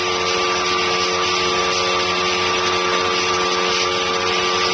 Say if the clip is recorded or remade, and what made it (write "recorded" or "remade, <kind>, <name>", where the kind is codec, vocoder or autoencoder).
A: recorded